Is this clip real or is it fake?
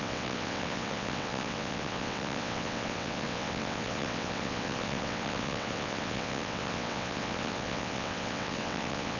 fake